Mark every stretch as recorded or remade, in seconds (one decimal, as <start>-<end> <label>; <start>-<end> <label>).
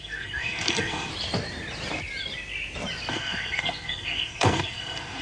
0.0-1.1 remade; 1.1-3.1 recorded; 3.1-5.2 remade